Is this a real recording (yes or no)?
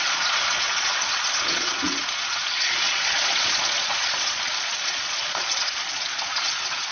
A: no